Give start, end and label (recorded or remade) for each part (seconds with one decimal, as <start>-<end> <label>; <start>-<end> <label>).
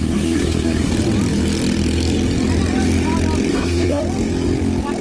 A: 0.0-0.9 remade; 0.9-3.5 recorded; 3.5-4.0 remade; 4.0-5.0 recorded